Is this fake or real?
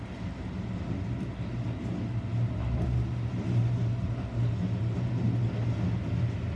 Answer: real